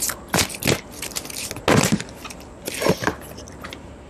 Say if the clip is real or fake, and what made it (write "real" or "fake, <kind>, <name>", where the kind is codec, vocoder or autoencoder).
real